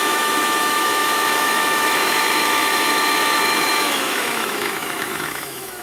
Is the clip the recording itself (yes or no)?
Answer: no